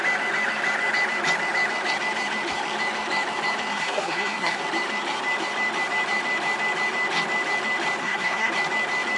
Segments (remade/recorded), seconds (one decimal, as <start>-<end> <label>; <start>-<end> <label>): 0.0-3.7 recorded; 3.7-4.6 remade; 4.6-8.0 recorded; 8.0-8.5 remade; 8.5-9.2 recorded